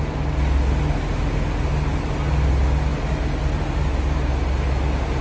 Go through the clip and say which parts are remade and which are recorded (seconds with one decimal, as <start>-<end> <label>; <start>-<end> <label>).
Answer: 0.0-5.2 recorded